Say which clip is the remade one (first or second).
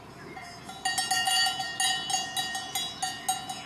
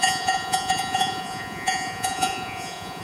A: second